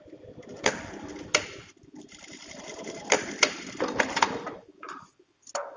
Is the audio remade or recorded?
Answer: remade